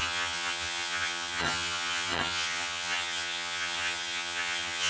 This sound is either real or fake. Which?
fake